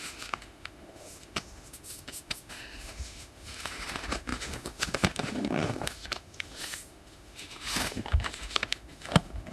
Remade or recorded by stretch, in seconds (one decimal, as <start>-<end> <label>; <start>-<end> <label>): 0.0-9.5 remade